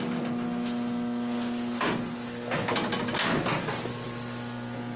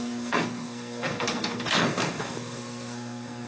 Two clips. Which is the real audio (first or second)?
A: first